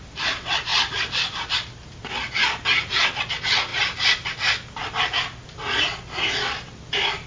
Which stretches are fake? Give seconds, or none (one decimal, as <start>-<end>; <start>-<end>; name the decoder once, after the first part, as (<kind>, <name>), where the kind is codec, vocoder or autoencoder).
none